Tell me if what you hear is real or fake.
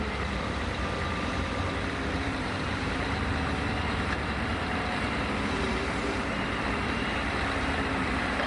fake